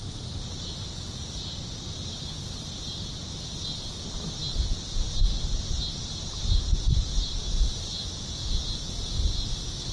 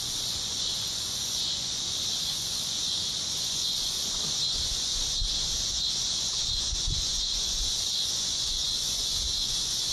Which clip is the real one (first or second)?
first